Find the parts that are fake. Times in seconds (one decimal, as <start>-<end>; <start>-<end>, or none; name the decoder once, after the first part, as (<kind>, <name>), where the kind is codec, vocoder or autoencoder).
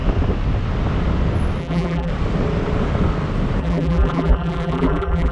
1.6-2.1 (vocoder, BigVGAN v2); 3.6-5.3